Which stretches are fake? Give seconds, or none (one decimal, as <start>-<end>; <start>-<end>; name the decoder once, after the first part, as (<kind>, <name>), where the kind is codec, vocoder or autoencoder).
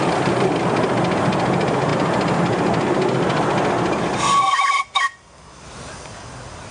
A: none